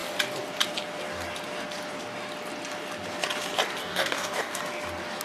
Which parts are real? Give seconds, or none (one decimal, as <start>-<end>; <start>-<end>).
0.0-3.8; 4.6-5.2